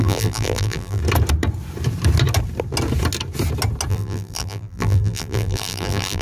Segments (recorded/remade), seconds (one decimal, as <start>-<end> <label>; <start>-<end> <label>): 0.0-1.0 remade; 1.0-3.9 recorded; 3.9-6.2 remade